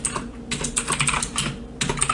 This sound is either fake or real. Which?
real